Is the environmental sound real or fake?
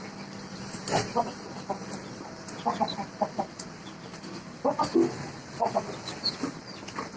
real